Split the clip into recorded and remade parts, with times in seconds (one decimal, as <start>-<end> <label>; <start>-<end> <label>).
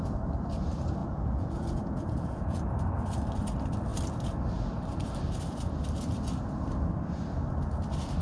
0.0-1.0 recorded; 1.0-2.7 remade; 2.7-8.2 recorded